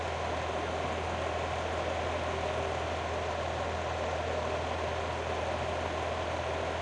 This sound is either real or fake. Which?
real